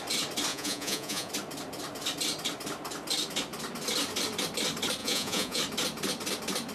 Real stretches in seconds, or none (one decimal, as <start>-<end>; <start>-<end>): 0.0-0.5; 1.3-5.0; 5.6-6.7